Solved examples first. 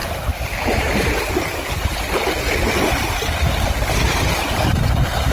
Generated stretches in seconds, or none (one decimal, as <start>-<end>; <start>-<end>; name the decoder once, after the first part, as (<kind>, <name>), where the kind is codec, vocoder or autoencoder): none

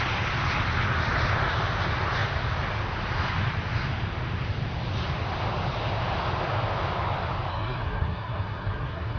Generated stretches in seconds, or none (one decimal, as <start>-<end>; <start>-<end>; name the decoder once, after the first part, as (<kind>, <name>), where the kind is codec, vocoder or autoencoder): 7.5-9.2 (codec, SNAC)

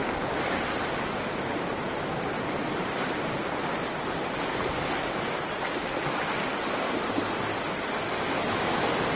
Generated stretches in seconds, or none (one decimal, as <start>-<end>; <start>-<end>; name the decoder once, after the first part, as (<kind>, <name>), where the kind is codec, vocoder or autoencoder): none

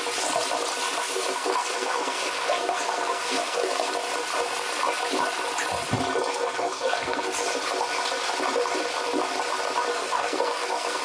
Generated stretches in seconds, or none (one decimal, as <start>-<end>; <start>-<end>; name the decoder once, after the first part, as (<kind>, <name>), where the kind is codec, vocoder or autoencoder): 1.0-3.9 (codec, SNAC); 6.3-7.3; 9.9-11.0